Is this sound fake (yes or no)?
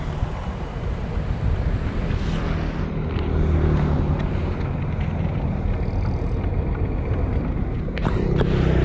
no